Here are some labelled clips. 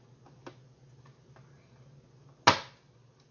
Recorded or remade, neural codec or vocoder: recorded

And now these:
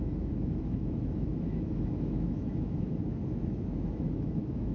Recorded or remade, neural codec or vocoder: remade, autoencoder, DAC-VAE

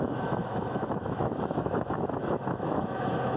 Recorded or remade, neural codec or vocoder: remade, autoencoder, DAC-VAE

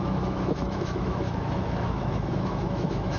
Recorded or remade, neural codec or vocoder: remade, autoencoder, DAC-VAE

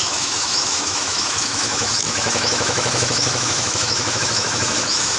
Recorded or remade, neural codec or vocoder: remade, autoencoder, DAC-VAE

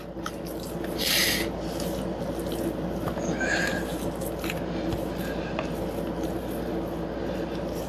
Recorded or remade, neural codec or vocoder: recorded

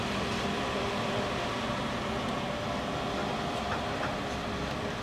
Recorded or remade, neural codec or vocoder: recorded